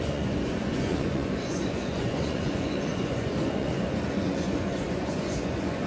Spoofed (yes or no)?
yes